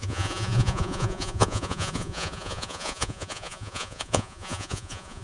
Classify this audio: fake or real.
fake